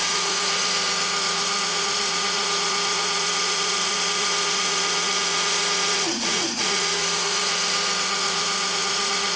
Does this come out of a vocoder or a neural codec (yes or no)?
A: yes